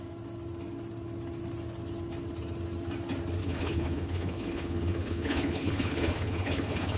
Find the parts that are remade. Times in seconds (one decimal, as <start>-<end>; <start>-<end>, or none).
3.4-7.0